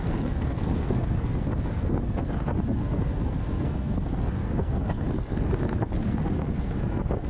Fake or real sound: fake